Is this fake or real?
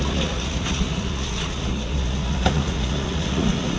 fake